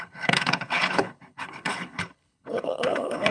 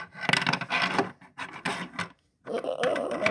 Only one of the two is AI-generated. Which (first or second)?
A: first